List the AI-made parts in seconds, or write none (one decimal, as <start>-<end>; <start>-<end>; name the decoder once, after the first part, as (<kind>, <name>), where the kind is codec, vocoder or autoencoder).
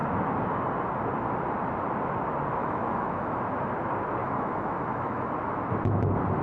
2.6-3.4 (autoencoder, DAC-VAE); 4.2-5.3